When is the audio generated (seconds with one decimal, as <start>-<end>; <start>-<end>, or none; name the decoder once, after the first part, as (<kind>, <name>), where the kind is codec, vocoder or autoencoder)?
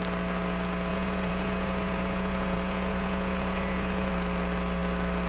0.9-4.1 (vocoder, Vocos)